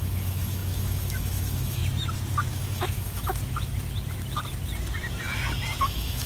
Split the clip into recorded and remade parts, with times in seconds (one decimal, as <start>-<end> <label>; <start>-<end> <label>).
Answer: 0.0-1.8 remade; 1.8-2.5 recorded; 2.5-3.4 remade; 3.4-5.8 recorded; 5.8-6.3 remade